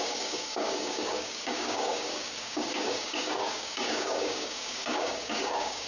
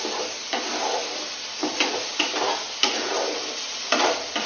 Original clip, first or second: second